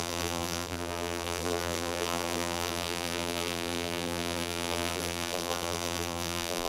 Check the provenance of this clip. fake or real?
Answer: fake